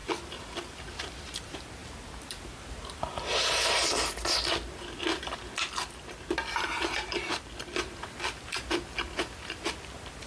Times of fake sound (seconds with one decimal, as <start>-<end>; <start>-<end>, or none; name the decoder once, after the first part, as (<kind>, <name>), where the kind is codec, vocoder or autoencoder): none